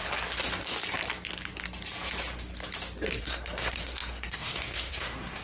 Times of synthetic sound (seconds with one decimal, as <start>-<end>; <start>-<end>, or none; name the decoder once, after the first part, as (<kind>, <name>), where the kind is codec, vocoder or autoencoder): 3.2-5.4 (codec, SNAC)